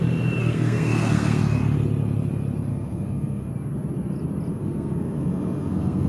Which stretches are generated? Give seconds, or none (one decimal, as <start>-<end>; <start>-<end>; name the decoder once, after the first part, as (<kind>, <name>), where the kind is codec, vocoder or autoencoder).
0.4-1.4 (codec, SNAC); 2.7-3.5; 4.5-6.1